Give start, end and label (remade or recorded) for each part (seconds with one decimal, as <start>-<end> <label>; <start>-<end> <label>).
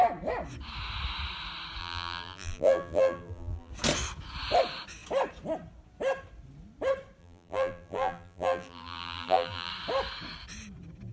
0.0-1.8 recorded; 1.8-3.7 remade; 3.7-7.2 recorded; 7.2-9.7 remade; 9.7-11.1 recorded